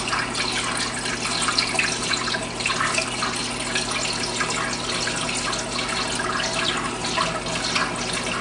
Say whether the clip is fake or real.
real